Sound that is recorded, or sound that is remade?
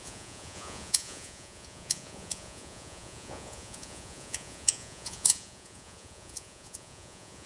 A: remade